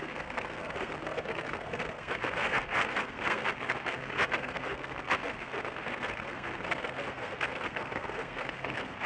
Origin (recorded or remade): remade